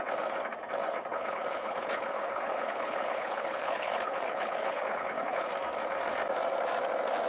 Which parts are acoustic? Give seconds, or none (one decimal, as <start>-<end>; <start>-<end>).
0.0-1.1; 5.5-7.3